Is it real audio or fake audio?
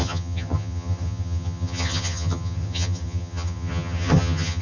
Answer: fake